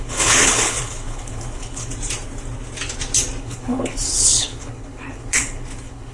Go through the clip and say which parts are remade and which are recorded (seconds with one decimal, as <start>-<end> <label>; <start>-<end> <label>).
0.0-1.9 remade; 1.9-3.4 recorded; 3.4-6.1 remade